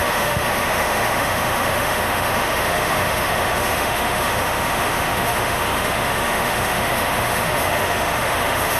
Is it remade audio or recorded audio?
remade